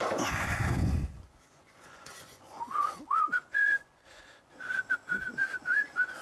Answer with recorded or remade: remade